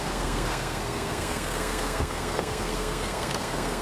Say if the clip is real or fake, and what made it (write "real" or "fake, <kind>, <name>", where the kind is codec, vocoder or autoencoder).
fake, codec, SNAC